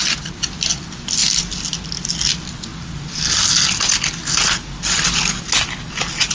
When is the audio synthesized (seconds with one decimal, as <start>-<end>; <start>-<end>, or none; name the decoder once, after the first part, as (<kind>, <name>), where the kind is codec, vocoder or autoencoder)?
none

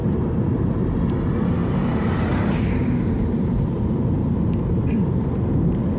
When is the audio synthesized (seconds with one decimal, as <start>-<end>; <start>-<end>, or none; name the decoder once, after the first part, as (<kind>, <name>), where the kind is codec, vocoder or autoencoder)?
0.0-0.7 (vocoder, BigVGAN v2); 1.6-5.2

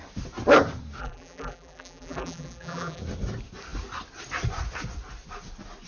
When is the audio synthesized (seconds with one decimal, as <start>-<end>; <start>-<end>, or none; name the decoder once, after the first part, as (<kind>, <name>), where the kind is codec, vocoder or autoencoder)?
1.0-3.0 (vocoder, BigVGAN v2)

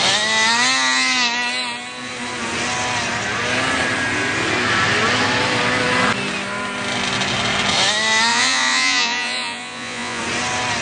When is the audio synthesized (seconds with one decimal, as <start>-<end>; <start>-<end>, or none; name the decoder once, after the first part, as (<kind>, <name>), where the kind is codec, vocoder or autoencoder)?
8.3-10.2 (vocoder, Vocos)